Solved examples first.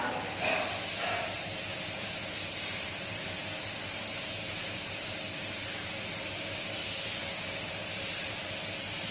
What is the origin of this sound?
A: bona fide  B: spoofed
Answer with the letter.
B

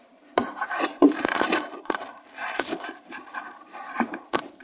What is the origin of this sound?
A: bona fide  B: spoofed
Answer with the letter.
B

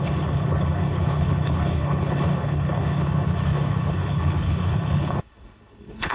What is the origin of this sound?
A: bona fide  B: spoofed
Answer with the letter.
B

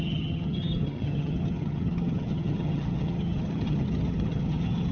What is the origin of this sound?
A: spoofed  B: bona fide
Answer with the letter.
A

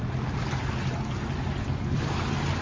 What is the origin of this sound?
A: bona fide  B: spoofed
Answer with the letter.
A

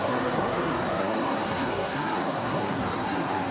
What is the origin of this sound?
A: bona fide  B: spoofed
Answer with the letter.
B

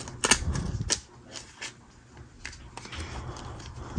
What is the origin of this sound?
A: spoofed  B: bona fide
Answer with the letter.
B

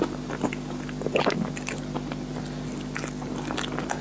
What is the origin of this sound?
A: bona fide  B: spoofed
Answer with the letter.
A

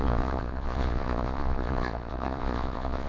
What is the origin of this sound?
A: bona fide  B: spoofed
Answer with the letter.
B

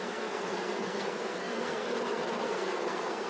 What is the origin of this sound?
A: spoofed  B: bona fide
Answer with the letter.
A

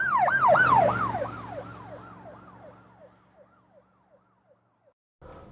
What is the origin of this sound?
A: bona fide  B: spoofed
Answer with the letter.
A